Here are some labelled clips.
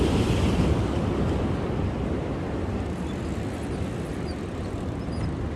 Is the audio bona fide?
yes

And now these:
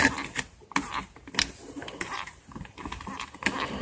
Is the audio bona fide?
yes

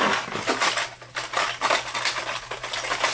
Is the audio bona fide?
yes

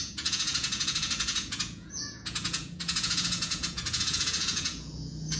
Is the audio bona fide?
no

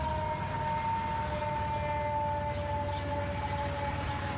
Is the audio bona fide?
yes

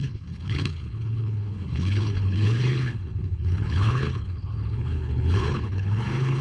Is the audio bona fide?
no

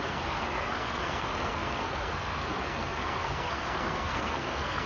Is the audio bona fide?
no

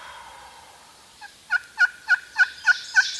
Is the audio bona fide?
yes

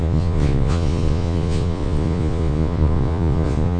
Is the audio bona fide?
no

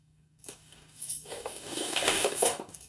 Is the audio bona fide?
no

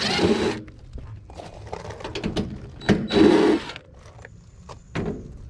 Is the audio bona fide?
yes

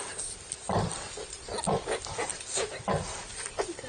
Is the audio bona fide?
yes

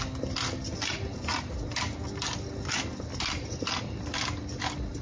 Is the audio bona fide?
yes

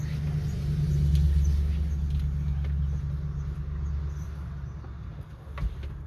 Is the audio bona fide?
yes